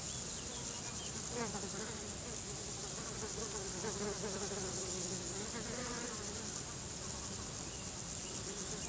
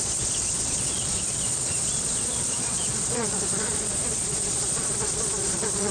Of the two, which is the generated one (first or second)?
second